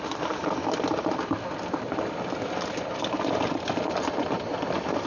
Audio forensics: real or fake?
real